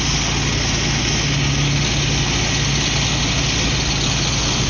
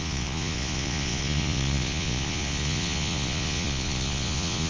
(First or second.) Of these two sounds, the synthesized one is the second